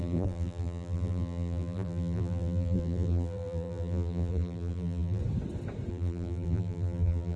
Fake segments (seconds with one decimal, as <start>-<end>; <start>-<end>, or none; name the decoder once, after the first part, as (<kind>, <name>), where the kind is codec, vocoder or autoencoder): 0.0-5.2 (vocoder, BigVGAN v2); 5.9-7.4